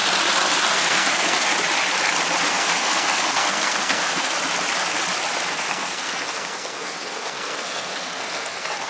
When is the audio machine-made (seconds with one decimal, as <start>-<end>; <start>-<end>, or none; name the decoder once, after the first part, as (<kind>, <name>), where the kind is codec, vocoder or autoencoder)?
0.7-1.5 (codec, SNAC); 2.5-4.4; 5.5-8.9